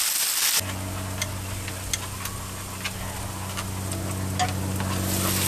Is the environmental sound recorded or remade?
recorded